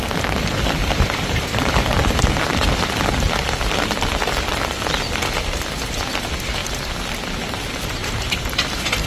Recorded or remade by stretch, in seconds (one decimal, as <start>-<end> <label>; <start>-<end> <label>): 0.0-0.8 recorded; 0.8-2.4 remade; 2.4-8.0 recorded; 8.0-8.7 remade; 8.7-9.1 recorded